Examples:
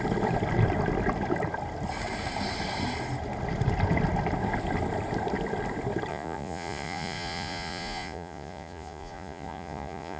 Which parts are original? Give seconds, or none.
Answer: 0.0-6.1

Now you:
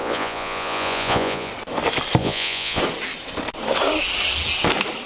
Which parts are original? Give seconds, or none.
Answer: 1.5-2.2; 2.8-5.1